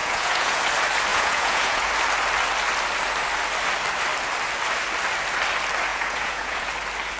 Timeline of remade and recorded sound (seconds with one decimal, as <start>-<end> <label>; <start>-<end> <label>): 0.0-0.6 remade; 0.6-1.1 recorded; 1.1-1.9 remade; 1.9-5.9 recorded; 5.9-6.7 remade; 6.7-7.2 recorded